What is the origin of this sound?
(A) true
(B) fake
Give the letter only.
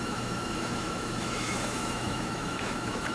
B